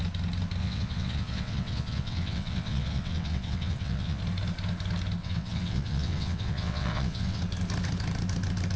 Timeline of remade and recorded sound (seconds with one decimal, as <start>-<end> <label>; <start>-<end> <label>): 0.0-0.6 recorded; 0.6-4.2 remade; 4.2-5.2 recorded; 5.2-7.4 remade; 7.4-8.8 recorded